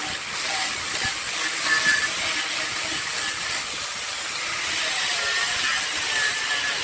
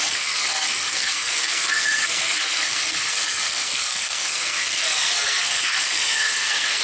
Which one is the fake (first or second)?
second